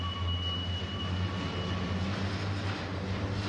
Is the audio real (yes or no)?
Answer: yes